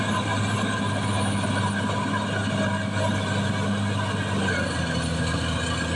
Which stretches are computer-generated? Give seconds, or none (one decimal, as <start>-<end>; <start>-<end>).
none